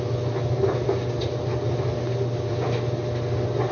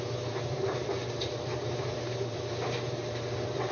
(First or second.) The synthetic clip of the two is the second